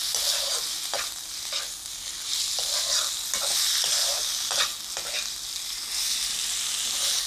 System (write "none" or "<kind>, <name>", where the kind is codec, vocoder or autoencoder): none